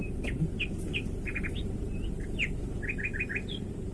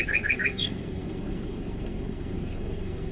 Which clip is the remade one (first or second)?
second